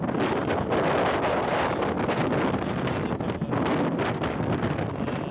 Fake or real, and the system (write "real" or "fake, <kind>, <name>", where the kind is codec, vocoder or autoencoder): real